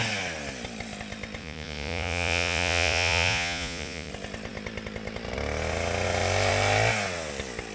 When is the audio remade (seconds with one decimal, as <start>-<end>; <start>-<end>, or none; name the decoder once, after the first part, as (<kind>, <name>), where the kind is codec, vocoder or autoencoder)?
1.4-4.1 (vocoder, Vocos)